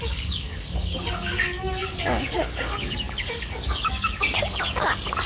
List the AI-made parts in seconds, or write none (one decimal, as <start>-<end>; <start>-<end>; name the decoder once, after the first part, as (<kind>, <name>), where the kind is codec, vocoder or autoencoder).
0.0-5.3 (codec, DAC)